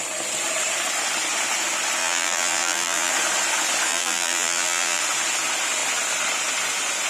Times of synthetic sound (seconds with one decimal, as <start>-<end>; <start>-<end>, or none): 2.0-3.1; 3.9-5.0